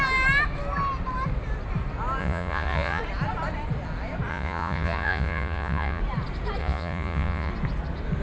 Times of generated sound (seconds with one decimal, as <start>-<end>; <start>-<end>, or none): 2.2-3.0; 4.3-6.0; 6.6-7.5